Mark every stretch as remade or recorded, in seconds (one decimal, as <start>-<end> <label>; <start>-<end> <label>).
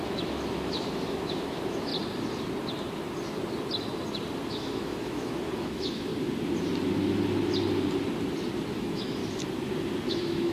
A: 0.0-1.9 remade; 1.9-4.5 recorded; 4.5-6.1 remade; 6.1-8.7 recorded; 8.7-9.2 remade; 9.2-10.1 recorded; 10.1-10.5 remade